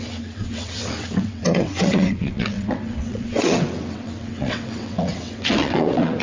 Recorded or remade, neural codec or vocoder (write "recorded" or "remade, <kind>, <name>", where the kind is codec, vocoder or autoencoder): remade, vocoder, WaveNeXt